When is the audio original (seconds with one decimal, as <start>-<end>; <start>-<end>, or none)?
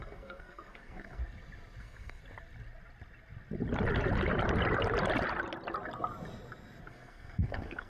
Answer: 1.2-1.8; 2.2-6.9